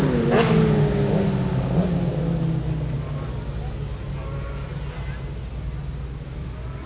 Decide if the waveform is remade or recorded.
recorded